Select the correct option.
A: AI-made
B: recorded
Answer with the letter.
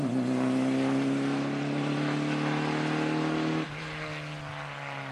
B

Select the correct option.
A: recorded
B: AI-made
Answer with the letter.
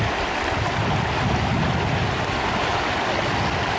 A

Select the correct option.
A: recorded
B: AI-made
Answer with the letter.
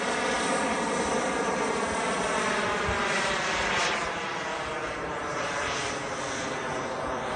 A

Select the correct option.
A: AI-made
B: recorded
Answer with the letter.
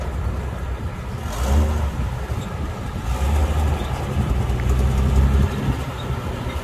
B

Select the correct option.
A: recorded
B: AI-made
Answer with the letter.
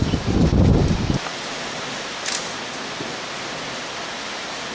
A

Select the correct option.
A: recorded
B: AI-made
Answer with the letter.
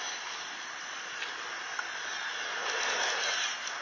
A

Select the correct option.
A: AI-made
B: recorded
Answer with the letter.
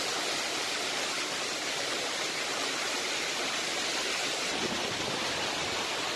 B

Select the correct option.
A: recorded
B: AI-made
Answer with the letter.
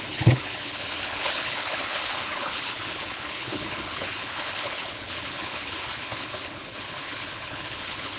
B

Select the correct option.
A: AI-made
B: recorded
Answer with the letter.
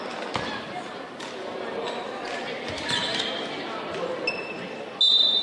B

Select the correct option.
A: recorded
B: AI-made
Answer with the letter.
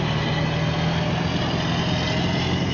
A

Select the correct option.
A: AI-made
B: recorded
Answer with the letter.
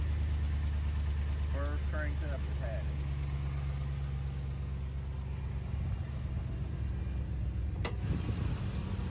B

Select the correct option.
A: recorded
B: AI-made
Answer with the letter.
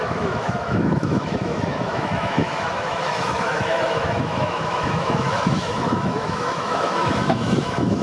B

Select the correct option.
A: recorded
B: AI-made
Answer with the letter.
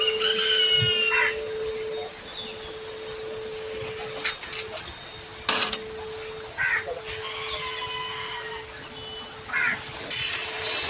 A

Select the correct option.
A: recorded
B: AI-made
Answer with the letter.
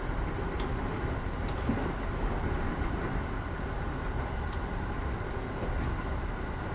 A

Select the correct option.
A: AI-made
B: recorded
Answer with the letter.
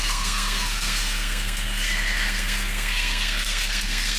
A